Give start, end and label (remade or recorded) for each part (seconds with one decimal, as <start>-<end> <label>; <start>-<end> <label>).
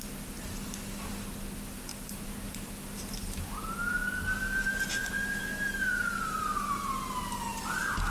0.0-8.1 recorded